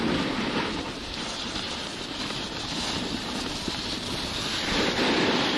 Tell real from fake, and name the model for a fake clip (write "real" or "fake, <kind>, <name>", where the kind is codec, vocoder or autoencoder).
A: real